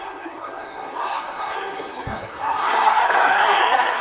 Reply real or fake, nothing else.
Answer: fake